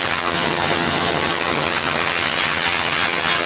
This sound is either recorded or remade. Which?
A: remade